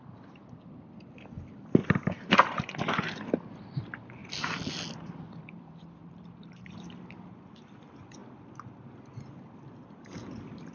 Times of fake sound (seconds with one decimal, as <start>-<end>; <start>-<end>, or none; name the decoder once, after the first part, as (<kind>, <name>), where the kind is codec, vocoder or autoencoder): 1.8-2.3 (vocoder, BigVGAN v2); 4.2-6.7